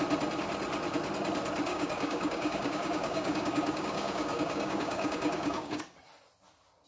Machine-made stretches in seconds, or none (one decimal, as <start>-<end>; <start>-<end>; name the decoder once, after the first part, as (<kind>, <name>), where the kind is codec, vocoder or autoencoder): 1.7-5.8 (codec, DAC)